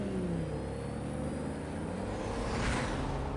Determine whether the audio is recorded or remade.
recorded